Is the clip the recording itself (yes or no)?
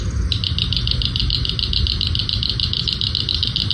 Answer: yes